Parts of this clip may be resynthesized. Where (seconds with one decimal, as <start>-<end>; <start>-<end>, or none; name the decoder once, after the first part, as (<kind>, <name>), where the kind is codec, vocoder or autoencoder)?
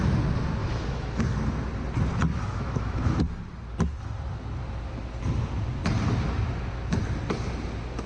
0.6-1.2 (autoencoder, DAC-VAE); 2.3-3.2